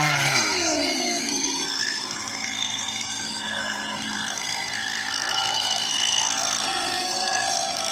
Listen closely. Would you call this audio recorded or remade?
remade